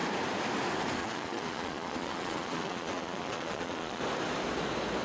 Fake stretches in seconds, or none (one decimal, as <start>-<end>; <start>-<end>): 1.0-4.0